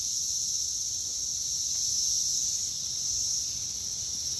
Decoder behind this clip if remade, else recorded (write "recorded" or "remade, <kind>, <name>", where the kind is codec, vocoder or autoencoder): recorded